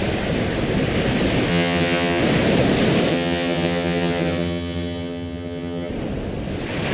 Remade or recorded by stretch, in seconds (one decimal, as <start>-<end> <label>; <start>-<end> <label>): 0.0-1.5 recorded; 1.5-2.2 remade; 2.2-3.1 recorded; 3.1-5.9 remade; 5.9-6.9 recorded